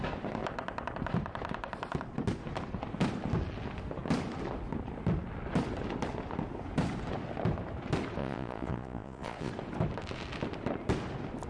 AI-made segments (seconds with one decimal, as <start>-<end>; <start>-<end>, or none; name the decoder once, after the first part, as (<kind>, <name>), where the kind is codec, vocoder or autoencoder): 8.2-9.5 (vocoder, Vocos)